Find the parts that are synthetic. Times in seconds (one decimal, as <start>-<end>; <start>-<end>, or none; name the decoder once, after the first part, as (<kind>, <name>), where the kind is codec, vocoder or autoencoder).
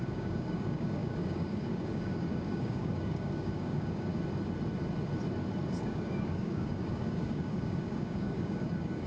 0.0-4.1 (codec, DAC); 5.8-9.1